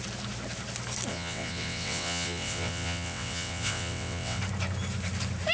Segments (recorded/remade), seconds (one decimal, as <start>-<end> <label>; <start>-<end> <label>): 0.0-1.1 recorded; 1.1-4.4 remade; 4.4-5.5 recorded